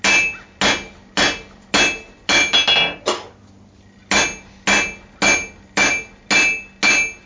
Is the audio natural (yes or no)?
yes